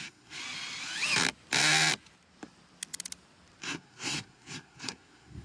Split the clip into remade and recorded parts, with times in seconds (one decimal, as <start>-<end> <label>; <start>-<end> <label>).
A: 0.0-0.4 remade; 0.4-3.6 recorded; 3.6-5.4 remade